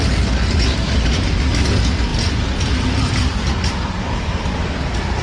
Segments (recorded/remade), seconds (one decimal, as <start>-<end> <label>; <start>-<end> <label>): 0.0-5.2 recorded